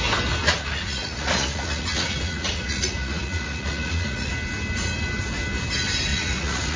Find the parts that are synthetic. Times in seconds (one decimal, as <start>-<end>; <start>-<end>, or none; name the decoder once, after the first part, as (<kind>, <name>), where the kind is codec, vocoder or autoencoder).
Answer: 0.4-4.3 (vocoder, Vocos); 6.1-6.8